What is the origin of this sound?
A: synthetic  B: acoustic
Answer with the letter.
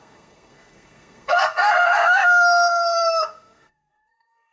A